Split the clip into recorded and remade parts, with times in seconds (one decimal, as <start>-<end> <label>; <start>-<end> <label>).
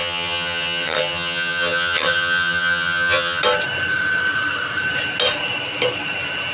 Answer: 0.0-3.4 remade; 3.4-6.5 recorded